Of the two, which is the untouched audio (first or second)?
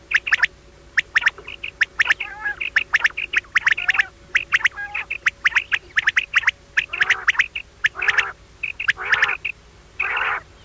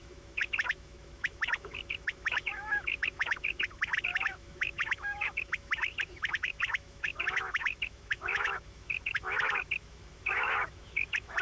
first